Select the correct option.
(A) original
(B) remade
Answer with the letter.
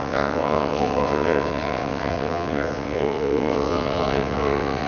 B